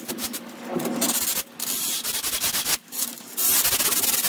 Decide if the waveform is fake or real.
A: real